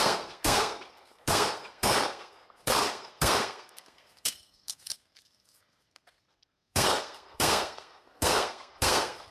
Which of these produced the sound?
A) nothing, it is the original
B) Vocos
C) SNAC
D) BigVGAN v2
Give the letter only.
C